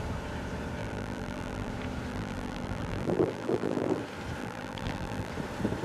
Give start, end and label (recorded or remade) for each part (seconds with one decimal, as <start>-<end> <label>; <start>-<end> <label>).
0.0-0.8 recorded; 0.8-1.7 remade; 1.7-2.1 recorded; 2.1-4.0 remade; 4.0-4.4 recorded; 4.4-5.3 remade; 5.3-5.8 recorded

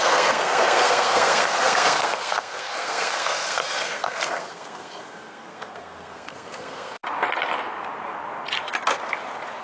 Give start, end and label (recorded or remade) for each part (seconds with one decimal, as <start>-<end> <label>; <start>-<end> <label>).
0.0-7.0 remade; 7.0-9.6 recorded